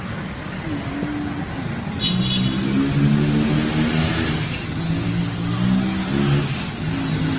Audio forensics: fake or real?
real